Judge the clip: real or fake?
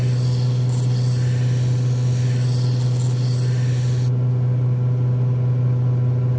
real